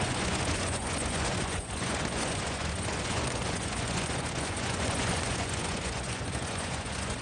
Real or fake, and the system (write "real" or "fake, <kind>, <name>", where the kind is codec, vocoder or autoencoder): fake, vocoder, Vocos